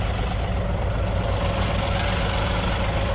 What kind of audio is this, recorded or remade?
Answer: recorded